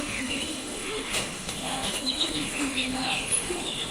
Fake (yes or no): yes